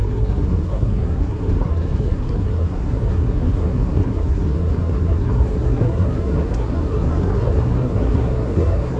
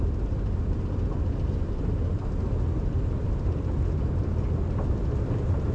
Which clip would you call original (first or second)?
second